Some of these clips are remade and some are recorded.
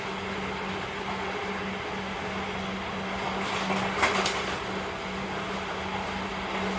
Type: recorded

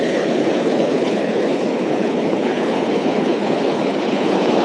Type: remade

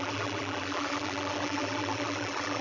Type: remade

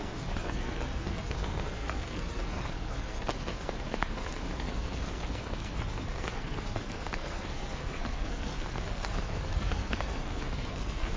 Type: remade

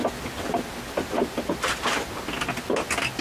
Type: recorded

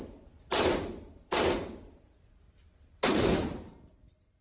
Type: recorded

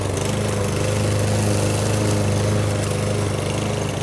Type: recorded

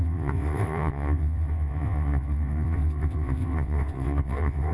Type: remade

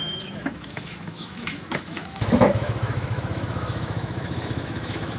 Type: remade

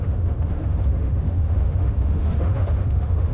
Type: remade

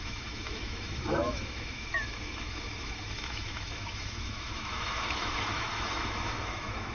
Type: remade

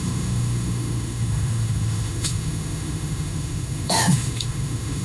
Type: remade